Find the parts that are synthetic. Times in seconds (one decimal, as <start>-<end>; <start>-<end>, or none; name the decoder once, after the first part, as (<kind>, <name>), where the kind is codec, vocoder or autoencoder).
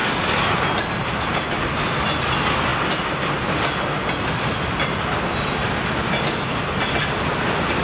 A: none